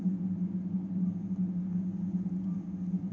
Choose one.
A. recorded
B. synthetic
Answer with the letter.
A